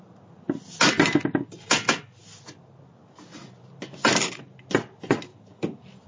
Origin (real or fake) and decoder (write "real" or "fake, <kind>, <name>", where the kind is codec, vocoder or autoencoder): real